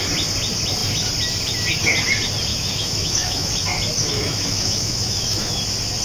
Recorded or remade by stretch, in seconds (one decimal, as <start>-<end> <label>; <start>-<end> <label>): 0.0-2.5 recorded; 2.5-3.5 remade; 3.5-4.0 recorded; 4.0-5.6 remade; 5.6-6.0 recorded